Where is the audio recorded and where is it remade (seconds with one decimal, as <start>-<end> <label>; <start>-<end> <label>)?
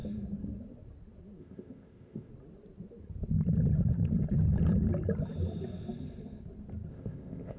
0.0-1.4 recorded; 1.4-2.3 remade; 2.3-6.9 recorded; 6.9-7.6 remade